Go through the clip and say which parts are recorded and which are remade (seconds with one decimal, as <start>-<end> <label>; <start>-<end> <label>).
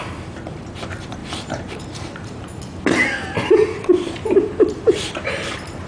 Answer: 0.0-1.2 recorded; 1.2-2.6 remade; 2.6-3.6 recorded; 3.6-5.9 remade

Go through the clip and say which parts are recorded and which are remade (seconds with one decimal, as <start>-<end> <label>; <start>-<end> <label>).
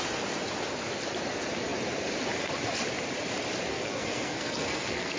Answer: 0.0-3.7 recorded; 3.7-5.2 remade